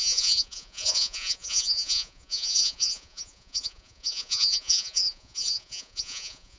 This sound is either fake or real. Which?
fake